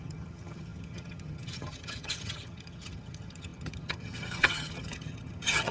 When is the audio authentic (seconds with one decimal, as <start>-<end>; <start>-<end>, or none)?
none